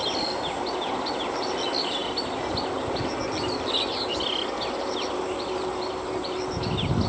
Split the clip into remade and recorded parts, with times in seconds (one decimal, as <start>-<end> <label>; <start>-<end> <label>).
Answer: 0.0-7.1 recorded